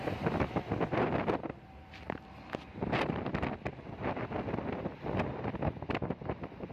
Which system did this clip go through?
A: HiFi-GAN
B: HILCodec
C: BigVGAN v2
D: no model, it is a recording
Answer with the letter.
D